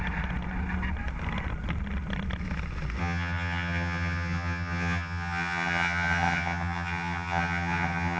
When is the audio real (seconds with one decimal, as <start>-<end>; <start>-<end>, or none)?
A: 0.0-3.0